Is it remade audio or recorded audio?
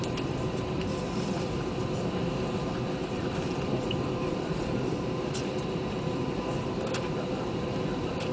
remade